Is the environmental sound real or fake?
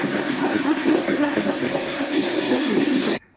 fake